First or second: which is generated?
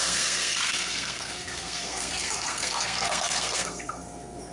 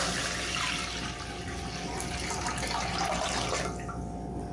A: first